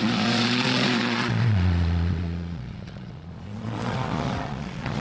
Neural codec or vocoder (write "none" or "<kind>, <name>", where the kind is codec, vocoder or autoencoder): vocoder, Vocos